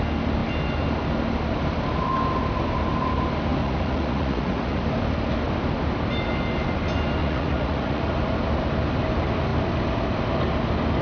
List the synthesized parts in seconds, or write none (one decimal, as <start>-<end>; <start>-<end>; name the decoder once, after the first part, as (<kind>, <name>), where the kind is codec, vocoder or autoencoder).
3.6-4.8 (vocoder, Vocos); 7.2-8.0